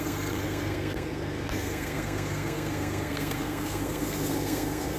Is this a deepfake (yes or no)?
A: yes